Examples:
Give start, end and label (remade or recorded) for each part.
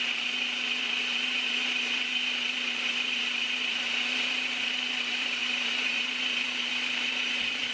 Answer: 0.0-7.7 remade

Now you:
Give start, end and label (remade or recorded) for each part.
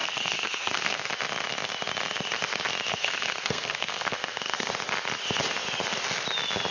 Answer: 0.0-1.1 remade; 1.1-2.9 recorded; 2.9-4.7 remade; 4.7-6.7 recorded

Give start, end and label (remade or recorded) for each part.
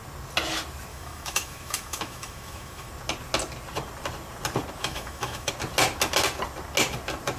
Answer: 0.0-0.9 recorded; 0.9-2.9 remade; 2.9-4.8 recorded; 4.8-5.5 remade; 5.5-7.4 recorded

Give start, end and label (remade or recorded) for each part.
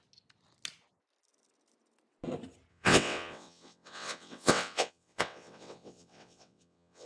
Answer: 0.0-2.7 recorded; 2.7-7.1 remade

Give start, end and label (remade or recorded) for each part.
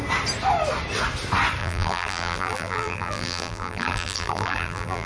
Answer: 0.0-1.6 recorded; 1.6-5.1 remade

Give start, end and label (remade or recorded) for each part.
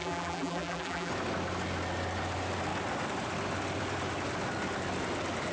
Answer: 0.0-1.1 remade; 1.1-5.5 recorded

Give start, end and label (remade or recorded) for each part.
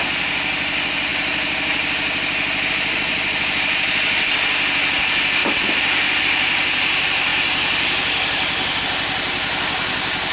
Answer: 0.0-10.3 recorded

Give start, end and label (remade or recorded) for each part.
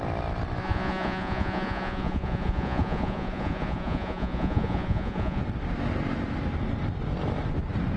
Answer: 0.0-0.6 recorded; 0.6-5.4 remade; 5.4-8.0 recorded